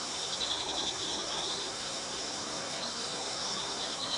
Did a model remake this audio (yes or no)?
yes